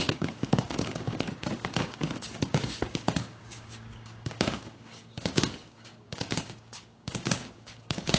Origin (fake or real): fake